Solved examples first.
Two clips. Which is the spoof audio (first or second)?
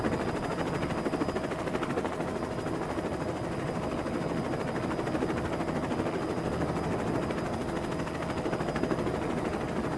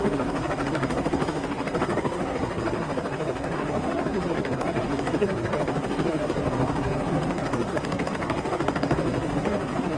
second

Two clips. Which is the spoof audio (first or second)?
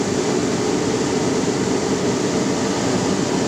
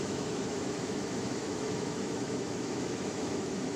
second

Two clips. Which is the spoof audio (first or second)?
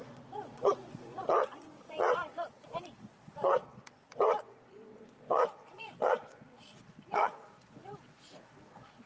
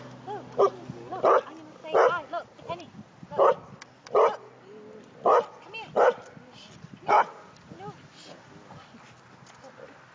first